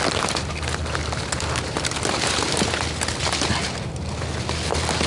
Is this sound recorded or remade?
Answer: recorded